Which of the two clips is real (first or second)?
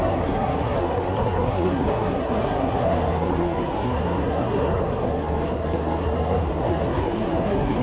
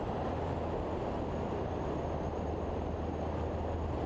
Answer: second